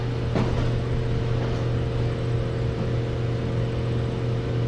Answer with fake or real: real